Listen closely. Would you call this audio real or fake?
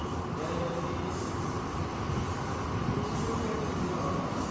real